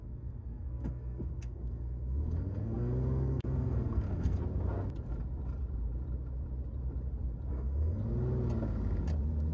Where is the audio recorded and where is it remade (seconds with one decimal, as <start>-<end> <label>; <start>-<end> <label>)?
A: 0.0-4.4 remade; 4.4-7.5 recorded; 7.5-8.0 remade; 8.0-9.5 recorded